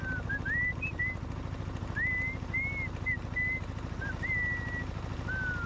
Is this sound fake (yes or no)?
no